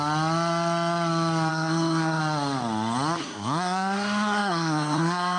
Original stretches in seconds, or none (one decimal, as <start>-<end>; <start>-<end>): 0.0-1.5; 2.2-3.2